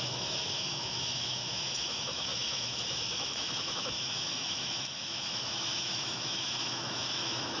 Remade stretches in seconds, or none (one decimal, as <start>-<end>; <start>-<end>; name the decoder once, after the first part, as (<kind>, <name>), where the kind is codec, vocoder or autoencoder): 0.0-7.6 (autoencoder, DAC-VAE)